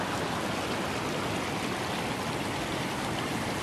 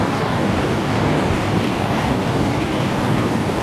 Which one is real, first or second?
first